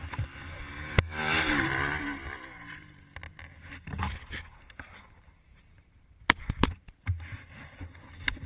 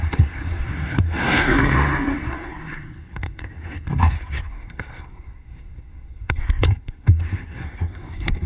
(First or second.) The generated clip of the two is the second